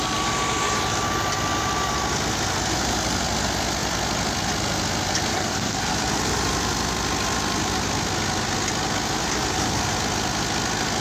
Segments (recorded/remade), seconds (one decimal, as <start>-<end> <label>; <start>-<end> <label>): 0.0-5.3 recorded; 5.3-5.9 remade; 5.9-11.0 recorded